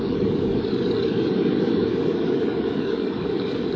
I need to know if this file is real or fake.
fake